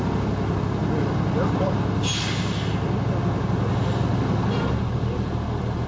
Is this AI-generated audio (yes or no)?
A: no